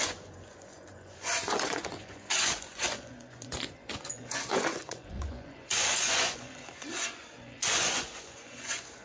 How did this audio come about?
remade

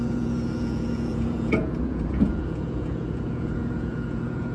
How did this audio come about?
remade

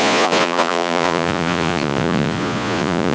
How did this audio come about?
remade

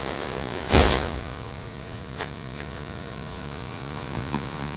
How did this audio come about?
remade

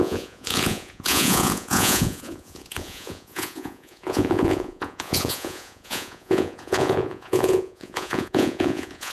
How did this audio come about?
remade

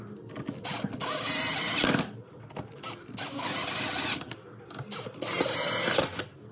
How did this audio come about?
recorded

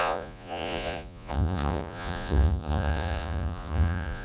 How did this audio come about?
remade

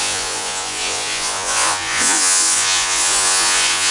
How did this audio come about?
remade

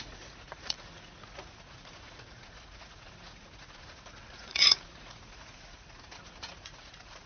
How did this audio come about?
remade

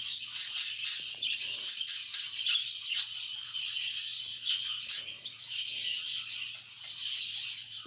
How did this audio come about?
remade